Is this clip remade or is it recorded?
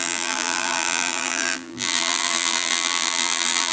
remade